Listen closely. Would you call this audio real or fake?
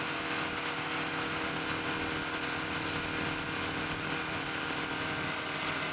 real